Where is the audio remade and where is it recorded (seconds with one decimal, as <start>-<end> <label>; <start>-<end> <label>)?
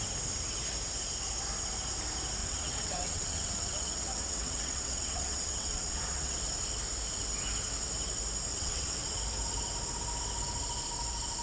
0.0-2.4 recorded; 2.4-6.4 remade; 6.4-8.5 recorded; 8.5-9.2 remade; 9.2-11.4 recorded